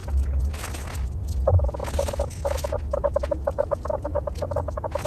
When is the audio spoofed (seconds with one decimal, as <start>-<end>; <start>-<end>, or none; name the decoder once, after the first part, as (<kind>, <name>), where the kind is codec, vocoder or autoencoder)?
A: none